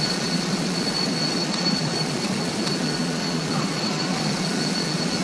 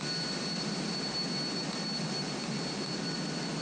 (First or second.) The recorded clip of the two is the second